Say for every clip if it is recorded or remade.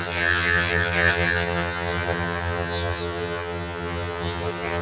remade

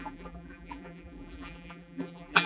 remade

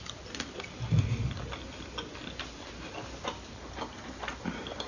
recorded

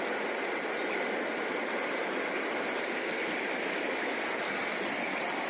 recorded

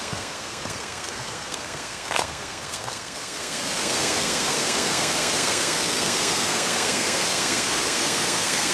remade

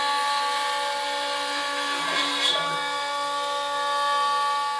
recorded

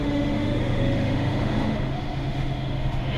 remade